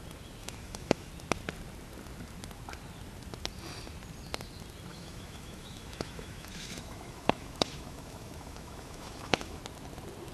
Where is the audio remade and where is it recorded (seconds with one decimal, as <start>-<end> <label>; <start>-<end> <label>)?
0.0-0.4 recorded; 0.4-1.1 remade; 1.1-4.9 recorded; 4.9-9.6 remade; 9.6-10.3 recorded